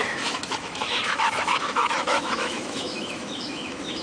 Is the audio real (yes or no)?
no